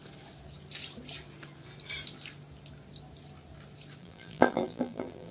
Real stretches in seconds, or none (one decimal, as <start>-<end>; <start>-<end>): 0.0-4.0

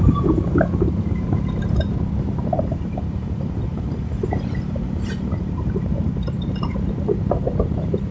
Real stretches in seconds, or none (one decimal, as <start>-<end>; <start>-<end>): 6.7-7.4

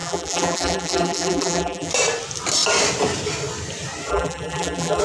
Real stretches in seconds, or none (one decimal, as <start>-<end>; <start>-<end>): 1.9-4.1

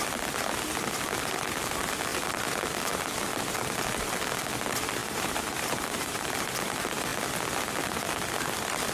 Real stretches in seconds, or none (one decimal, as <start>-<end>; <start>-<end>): 0.0-5.0; 6.3-8.9

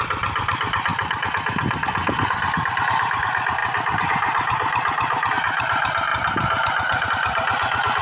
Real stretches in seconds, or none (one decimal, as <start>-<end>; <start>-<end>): 0.9-2.8; 6.1-7.1

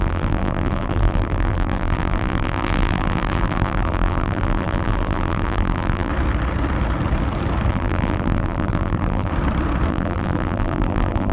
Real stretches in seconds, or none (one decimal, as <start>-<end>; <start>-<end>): 6.1-7.7; 9.3-9.9